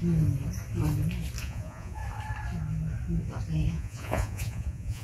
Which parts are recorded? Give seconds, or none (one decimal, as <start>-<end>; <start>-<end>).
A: 0.0-1.4; 2.0-3.7